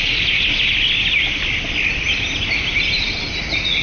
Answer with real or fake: real